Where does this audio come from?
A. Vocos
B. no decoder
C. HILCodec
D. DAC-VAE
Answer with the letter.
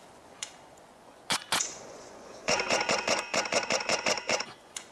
A